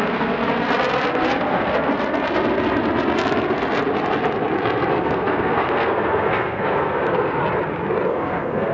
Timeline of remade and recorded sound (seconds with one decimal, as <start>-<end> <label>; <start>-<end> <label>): 0.0-0.4 remade; 0.4-1.1 recorded; 1.1-1.9 remade; 1.9-4.9 recorded; 4.9-7.4 remade; 7.4-8.1 recorded; 8.1-8.7 remade